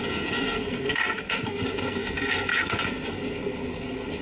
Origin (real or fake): fake